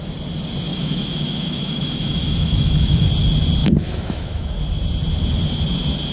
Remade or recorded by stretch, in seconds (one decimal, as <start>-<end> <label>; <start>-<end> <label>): 0.0-0.7 recorded; 0.7-3.1 remade; 3.1-3.6 recorded; 3.6-4.6 remade; 4.6-6.1 recorded